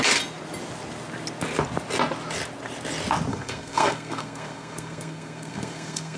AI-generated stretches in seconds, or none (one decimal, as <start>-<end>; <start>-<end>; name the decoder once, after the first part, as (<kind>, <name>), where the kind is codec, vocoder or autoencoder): 3.3-6.2 (codec, SNAC)